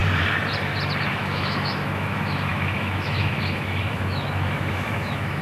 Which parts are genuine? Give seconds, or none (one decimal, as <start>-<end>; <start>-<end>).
0.0-1.1